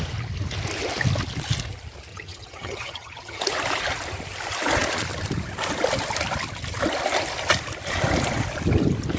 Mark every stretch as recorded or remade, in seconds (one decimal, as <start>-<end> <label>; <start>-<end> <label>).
0.0-2.1 recorded; 2.1-3.4 remade; 3.4-9.2 recorded